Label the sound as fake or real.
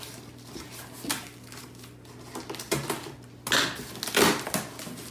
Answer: real